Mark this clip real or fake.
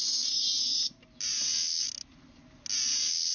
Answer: real